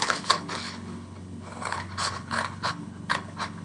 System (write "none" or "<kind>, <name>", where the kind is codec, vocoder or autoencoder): codec, HILCodec